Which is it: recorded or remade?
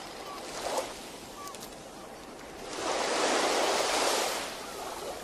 recorded